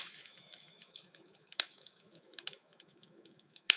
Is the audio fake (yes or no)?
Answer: yes